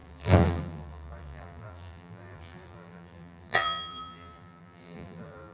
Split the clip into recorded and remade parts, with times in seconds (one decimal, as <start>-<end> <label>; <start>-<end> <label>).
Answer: 0.0-5.5 remade